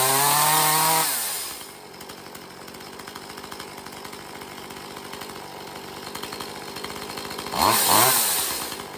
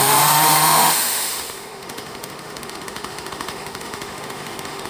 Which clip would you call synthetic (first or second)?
second